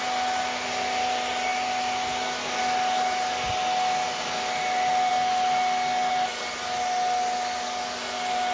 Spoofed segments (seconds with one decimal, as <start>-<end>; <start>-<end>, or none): none